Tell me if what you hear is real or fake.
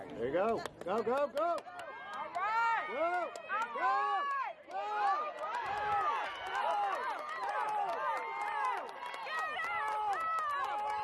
real